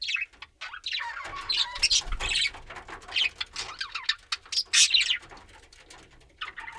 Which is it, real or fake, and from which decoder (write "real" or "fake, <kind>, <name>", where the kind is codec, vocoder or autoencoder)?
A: real